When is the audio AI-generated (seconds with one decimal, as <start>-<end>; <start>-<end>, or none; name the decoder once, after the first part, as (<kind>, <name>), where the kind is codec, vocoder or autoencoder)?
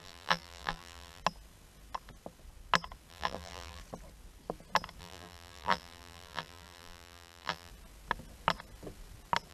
0.0-1.2 (vocoder, BigVGAN v2); 3.1-3.8; 5.0-7.7